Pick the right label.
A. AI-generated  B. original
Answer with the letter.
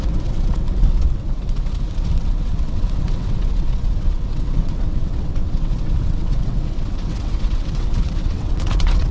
A